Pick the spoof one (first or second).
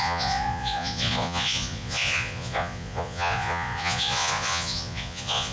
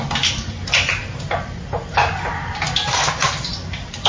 first